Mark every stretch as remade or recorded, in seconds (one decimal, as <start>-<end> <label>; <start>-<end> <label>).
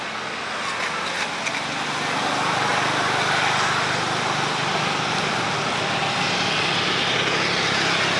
0.0-8.2 recorded